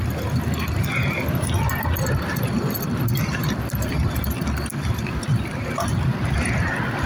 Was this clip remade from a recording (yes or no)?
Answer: no